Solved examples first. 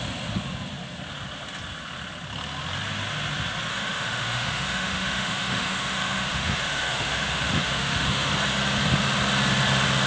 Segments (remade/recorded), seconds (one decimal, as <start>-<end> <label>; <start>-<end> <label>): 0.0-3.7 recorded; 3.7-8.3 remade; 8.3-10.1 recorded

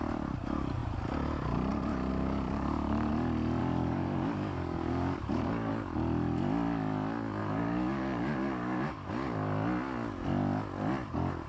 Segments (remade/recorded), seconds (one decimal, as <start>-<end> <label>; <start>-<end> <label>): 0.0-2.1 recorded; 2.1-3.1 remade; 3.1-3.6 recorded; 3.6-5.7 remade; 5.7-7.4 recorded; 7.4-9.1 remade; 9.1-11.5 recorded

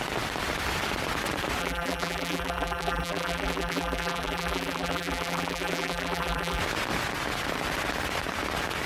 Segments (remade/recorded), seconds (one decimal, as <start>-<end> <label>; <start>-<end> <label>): 0.0-1.6 recorded; 1.6-6.6 remade; 6.6-8.9 recorded

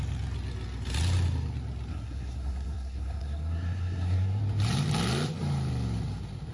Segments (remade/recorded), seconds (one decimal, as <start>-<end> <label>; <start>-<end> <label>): 0.0-1.9 recorded; 1.9-4.4 remade; 4.4-6.5 recorded

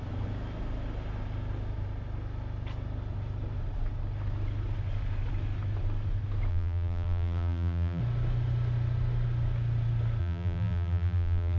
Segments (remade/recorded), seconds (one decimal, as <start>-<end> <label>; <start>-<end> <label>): 0.0-6.5 recorded; 6.5-8.0 remade; 8.0-10.2 recorded; 10.2-11.6 remade

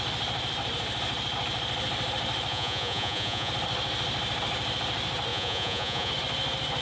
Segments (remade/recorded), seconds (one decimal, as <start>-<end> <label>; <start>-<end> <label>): 0.0-2.5 recorded; 2.5-3.5 remade; 3.5-5.3 recorded; 5.3-6.1 remade; 6.1-6.8 recorded

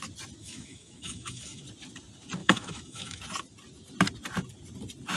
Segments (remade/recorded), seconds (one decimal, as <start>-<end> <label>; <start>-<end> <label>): 0.0-0.4 recorded; 0.4-1.6 remade; 1.6-2.4 recorded; 2.4-3.2 remade; 3.2-5.2 recorded